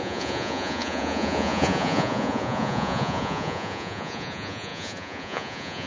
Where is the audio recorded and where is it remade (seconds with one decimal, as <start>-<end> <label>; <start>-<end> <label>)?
0.0-5.9 remade